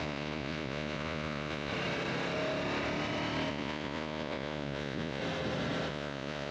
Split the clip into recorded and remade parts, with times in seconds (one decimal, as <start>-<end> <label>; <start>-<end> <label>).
0.0-1.7 remade; 1.7-3.5 recorded; 3.5-5.2 remade; 5.2-5.9 recorded; 5.9-6.5 remade

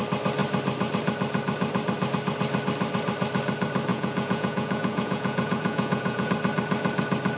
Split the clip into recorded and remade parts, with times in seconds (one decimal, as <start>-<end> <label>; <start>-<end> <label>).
0.0-3.9 recorded; 3.9-6.3 remade; 6.3-7.4 recorded